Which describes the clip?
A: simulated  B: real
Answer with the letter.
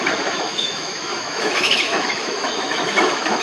A